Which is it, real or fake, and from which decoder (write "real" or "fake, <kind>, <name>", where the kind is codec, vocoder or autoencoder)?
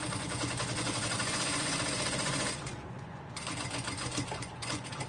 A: fake, vocoder, Vocos